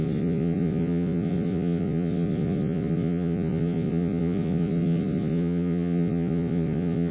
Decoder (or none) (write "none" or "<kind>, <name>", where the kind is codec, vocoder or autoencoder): vocoder, Vocos